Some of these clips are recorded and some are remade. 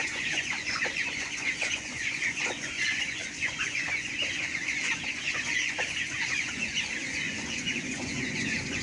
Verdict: remade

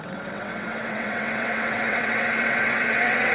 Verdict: remade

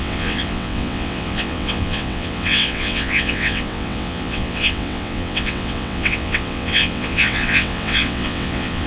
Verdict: remade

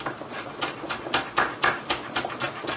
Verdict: recorded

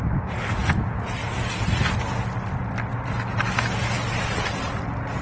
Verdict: recorded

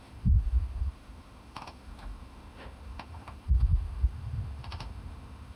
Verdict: remade